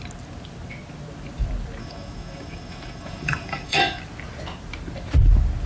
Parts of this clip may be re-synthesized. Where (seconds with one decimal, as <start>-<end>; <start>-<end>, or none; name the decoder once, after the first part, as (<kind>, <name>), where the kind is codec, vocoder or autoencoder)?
1.8-4.0 (autoencoder, DAC-VAE)